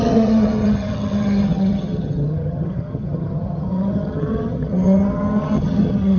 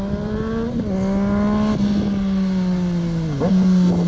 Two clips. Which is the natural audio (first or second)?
second